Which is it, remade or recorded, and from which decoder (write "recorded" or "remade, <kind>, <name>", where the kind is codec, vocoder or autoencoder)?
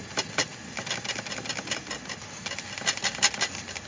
recorded